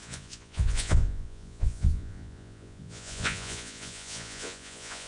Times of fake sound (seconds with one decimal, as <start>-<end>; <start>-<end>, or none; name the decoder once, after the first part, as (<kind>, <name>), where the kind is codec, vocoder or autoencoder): 0.0-5.1 (vocoder, Vocos)